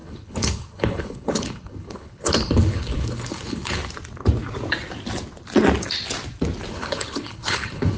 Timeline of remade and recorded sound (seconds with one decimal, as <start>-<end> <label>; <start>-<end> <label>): 0.0-3.8 remade; 3.8-6.7 recorded; 6.7-8.0 remade